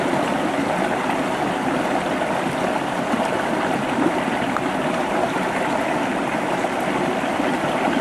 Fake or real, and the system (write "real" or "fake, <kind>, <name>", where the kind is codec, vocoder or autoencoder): real